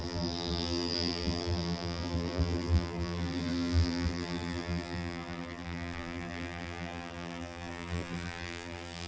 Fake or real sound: fake